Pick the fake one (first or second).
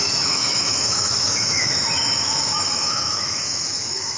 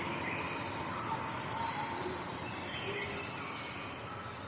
first